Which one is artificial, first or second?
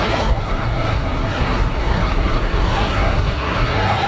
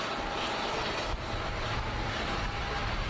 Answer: first